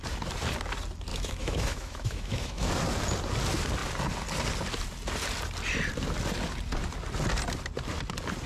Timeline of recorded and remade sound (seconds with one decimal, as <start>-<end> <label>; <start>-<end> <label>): 0.0-1.1 recorded; 1.1-2.7 remade; 2.7-8.5 recorded

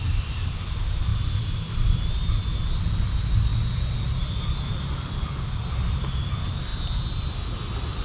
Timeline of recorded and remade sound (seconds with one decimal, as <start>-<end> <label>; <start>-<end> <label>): 0.0-8.0 recorded

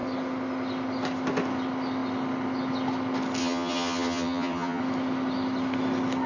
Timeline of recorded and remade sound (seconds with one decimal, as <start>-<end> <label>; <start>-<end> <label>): 0.0-3.4 recorded; 3.4-4.8 remade; 4.8-6.3 recorded

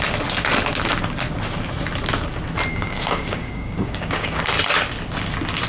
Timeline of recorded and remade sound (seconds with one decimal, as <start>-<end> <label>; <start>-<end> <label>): 0.0-2.7 recorded; 2.7-4.4 remade; 4.4-5.7 recorded